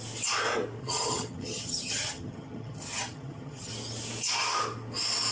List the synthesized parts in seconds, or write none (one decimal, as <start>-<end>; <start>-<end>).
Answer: 0.8-3.7